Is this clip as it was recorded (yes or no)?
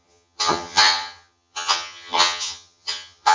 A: no